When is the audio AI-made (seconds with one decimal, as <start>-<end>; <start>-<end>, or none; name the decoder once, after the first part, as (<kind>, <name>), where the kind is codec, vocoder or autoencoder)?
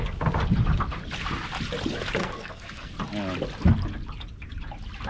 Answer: 2.2-2.9 (codec, SNAC)